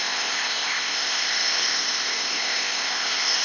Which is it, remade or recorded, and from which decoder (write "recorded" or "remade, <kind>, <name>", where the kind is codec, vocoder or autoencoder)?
remade, codec, ZipCodec